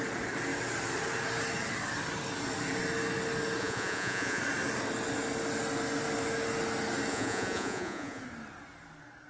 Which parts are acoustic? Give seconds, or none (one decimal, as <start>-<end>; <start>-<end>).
0.0-3.6; 4.4-7.1; 8.2-9.3